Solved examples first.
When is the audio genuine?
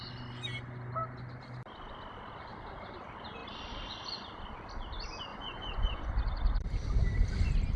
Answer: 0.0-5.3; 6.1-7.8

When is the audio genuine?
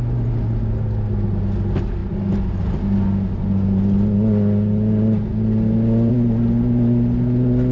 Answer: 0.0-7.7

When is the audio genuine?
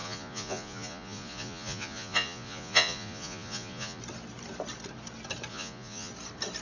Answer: 4.0-5.5; 6.1-6.6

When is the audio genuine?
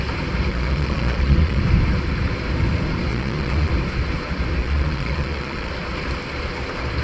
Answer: 0.0-0.5; 1.6-3.1; 3.7-4.6; 5.7-7.0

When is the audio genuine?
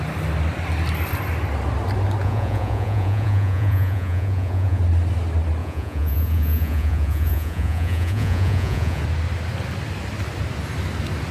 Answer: 0.0-2.2; 4.8-5.6; 9.0-11.3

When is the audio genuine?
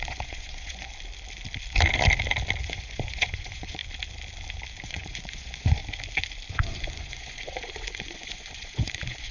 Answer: 0.9-2.6; 3.8-4.8; 5.8-6.5